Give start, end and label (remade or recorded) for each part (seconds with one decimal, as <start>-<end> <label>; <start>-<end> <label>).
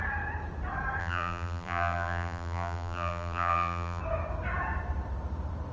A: 0.0-1.0 recorded; 1.0-4.0 remade; 4.0-5.7 recorded